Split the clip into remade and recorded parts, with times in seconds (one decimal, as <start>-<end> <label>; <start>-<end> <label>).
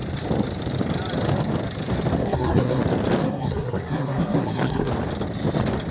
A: 0.0-2.2 recorded; 2.2-2.8 remade; 2.8-3.2 recorded; 3.2-4.9 remade; 4.9-5.9 recorded